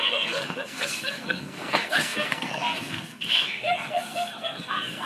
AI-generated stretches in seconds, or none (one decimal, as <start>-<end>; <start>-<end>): 0.0-5.1